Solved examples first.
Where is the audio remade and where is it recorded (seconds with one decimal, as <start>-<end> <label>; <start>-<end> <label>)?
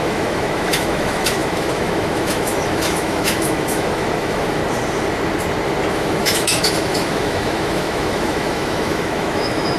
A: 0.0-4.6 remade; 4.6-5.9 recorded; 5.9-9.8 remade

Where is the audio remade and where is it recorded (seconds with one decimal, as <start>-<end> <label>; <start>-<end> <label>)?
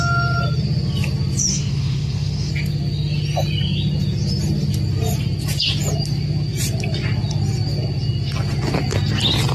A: 0.0-1.5 recorded; 1.5-2.5 remade; 2.5-9.5 recorded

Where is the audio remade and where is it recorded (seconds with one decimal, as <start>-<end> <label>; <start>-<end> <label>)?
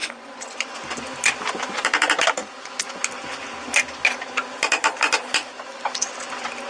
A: 0.0-0.7 remade; 0.7-6.7 recorded